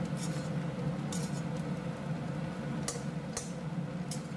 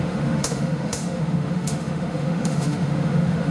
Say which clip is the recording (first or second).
first